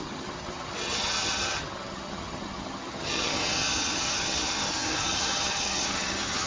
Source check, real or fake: fake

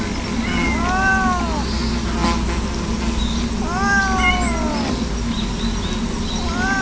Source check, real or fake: real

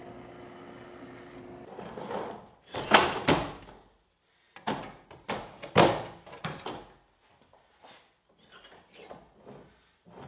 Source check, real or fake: real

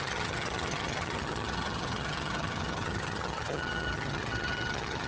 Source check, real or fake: fake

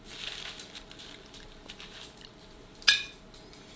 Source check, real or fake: real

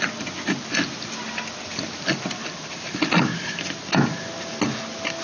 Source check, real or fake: real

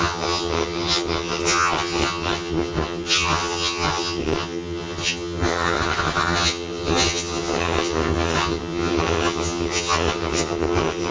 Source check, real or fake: fake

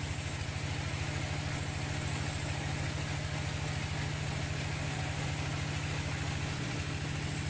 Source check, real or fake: real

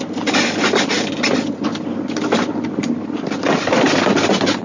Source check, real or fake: real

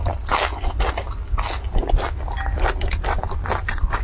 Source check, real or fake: real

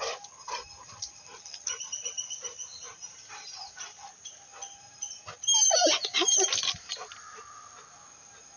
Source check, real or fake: real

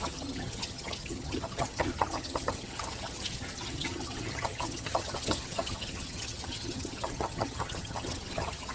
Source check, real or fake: fake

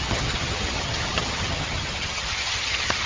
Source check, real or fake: fake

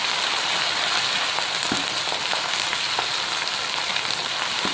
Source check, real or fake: real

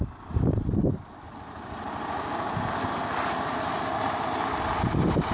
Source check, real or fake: real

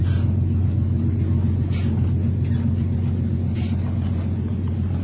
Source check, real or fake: real